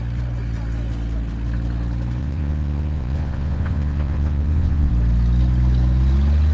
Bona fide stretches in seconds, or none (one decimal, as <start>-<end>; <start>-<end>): 0.0-2.2; 4.9-6.5